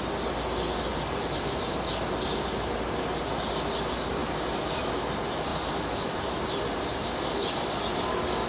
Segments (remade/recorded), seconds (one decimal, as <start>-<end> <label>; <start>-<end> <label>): 0.0-0.9 recorded; 0.9-3.2 remade; 3.2-5.5 recorded; 5.5-7.1 remade; 7.1-8.5 recorded